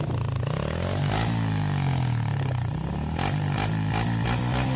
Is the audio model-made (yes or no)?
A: no